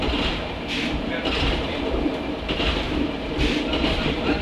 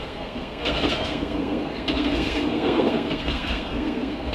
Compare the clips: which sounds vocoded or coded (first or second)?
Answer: second